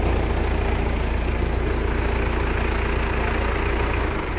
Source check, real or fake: real